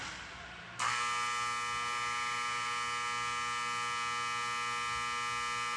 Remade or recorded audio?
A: recorded